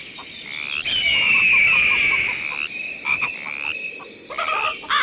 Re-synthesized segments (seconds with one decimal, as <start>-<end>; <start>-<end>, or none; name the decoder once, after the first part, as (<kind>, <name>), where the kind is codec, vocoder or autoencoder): none